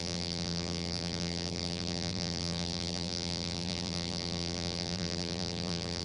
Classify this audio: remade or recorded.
remade